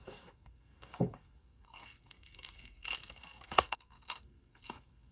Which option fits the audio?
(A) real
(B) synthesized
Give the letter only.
B